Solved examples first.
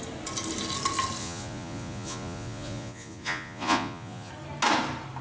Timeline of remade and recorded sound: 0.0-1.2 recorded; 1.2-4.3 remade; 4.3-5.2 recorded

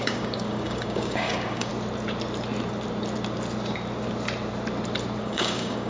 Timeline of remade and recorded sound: 0.0-1.7 remade; 1.7-5.2 recorded; 5.2-5.9 remade

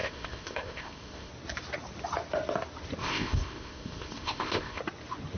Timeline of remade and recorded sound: 0.0-1.3 remade; 1.3-3.0 recorded; 3.0-4.8 remade; 4.8-5.4 recorded

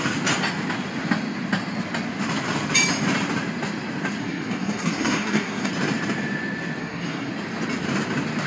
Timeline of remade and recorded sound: 0.0-4.2 recorded; 4.2-5.7 remade; 5.7-6.8 recorded; 6.8-7.3 remade; 7.3-8.5 recorded

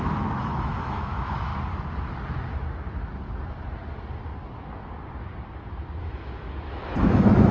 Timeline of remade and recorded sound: 0.0-1.5 remade; 1.5-6.0 recorded; 6.0-7.5 remade